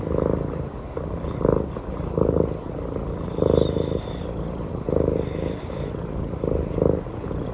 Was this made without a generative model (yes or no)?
no